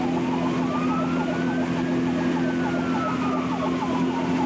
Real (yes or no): yes